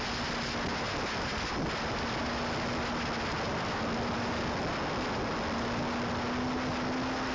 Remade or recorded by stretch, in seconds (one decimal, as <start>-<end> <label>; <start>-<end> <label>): 0.0-3.5 recorded; 3.5-4.3 remade; 4.3-7.3 recorded